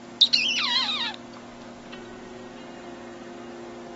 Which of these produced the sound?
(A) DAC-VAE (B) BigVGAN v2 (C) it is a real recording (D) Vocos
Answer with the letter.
C